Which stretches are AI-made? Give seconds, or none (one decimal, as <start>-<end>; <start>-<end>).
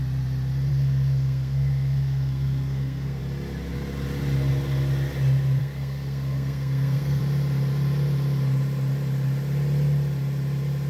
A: 0.7-3.2; 5.6-7.2